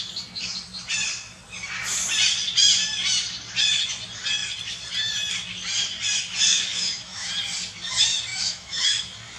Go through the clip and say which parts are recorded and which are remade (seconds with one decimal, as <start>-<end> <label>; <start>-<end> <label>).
0.0-6.5 recorded; 6.5-7.3 remade; 7.3-8.3 recorded; 8.3-9.0 remade; 9.0-9.4 recorded